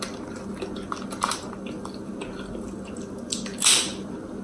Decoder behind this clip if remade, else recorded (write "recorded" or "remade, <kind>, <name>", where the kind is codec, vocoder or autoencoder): recorded